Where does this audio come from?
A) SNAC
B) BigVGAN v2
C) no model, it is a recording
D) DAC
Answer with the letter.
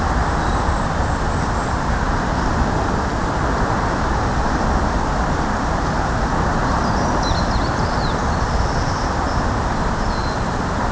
B